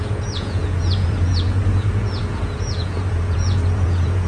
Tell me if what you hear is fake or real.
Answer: fake